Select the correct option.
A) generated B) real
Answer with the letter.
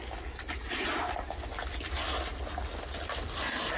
B